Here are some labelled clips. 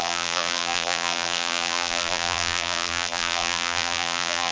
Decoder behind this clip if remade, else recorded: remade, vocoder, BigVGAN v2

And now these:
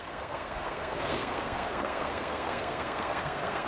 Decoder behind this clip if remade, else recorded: remade, codec, SNAC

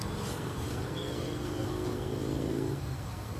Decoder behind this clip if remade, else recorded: remade, codec, SNAC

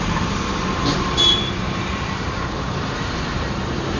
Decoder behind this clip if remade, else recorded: remade, vocoder, BigVGAN v2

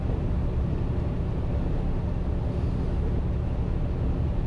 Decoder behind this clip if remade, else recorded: recorded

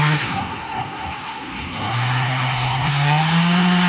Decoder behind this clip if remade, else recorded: remade, codec, SNAC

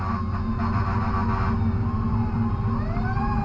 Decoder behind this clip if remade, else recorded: recorded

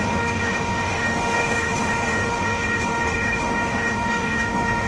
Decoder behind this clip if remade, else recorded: remade, autoencoder, DAC-VAE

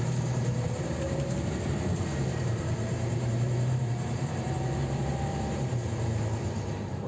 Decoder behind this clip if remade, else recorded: remade, vocoder, BigVGAN v2